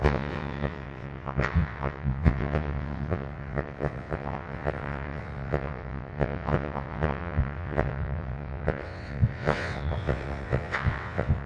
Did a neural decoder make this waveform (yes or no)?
yes